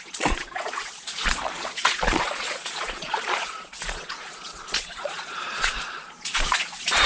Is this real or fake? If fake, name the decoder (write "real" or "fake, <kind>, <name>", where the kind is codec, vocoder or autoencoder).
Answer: fake, vocoder, Vocos